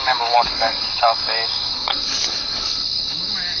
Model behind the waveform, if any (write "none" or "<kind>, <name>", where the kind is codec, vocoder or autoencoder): codec, DAC